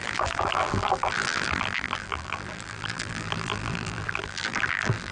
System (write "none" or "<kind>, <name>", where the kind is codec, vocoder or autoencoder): vocoder, BigVGAN v2